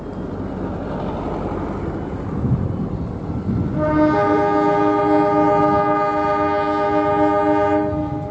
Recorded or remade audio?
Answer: recorded